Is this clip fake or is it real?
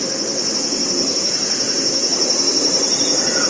real